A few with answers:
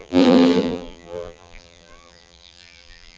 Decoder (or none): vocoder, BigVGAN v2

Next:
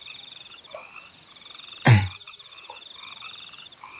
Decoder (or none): vocoder, BigVGAN v2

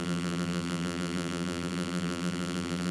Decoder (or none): vocoder, BigVGAN v2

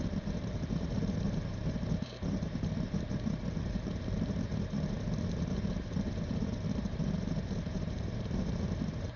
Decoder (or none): vocoder, BigVGAN v2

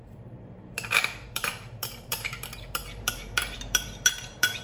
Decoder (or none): vocoder, BigVGAN v2